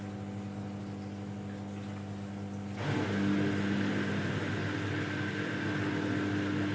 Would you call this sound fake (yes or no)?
no